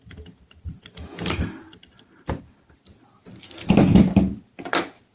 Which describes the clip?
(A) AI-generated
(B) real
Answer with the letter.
B